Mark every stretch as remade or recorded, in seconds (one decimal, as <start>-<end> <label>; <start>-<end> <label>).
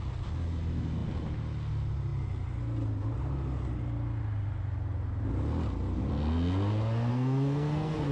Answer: 0.0-7.1 recorded; 7.1-8.1 remade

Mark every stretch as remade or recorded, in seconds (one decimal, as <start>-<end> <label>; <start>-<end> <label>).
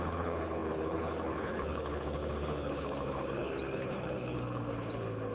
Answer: 0.0-5.3 remade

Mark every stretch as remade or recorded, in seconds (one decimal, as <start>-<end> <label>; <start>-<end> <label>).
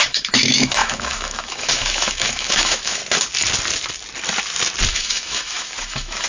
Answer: 0.0-3.0 remade; 3.0-4.9 recorded; 4.9-6.3 remade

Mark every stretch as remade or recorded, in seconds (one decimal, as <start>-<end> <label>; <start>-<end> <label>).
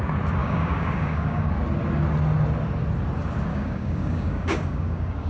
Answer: 0.0-0.4 recorded; 0.4-1.5 remade; 1.5-3.5 recorded; 3.5-5.3 remade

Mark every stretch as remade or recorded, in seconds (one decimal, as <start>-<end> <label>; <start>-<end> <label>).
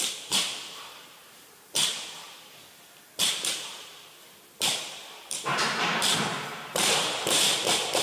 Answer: 0.0-1.8 remade; 1.8-3.2 recorded; 3.2-8.0 remade